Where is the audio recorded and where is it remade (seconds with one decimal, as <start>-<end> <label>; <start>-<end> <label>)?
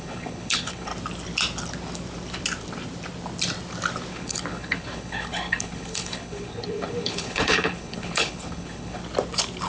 0.0-0.9 remade; 0.9-4.1 recorded; 4.1-9.0 remade; 9.0-9.7 recorded